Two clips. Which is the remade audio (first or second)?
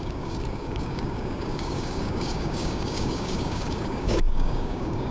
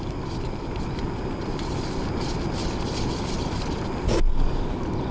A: first